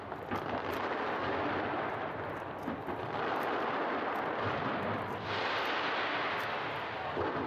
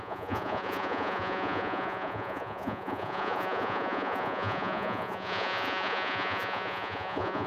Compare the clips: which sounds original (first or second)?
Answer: first